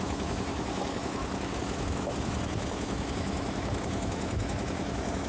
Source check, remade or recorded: remade